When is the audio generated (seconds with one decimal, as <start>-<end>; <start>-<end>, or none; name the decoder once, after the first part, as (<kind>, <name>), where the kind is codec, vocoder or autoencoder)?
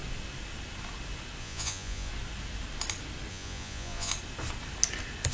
1.4-2.1 (vocoder, Vocos); 3.3-4.1